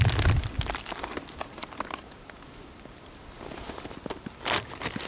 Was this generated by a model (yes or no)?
no